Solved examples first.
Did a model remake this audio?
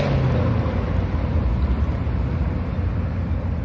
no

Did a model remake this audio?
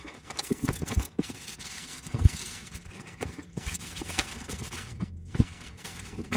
yes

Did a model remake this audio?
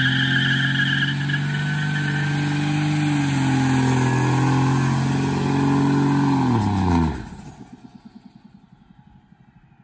no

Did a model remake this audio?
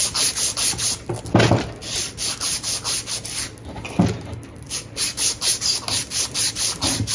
no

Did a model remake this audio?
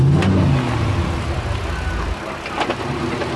no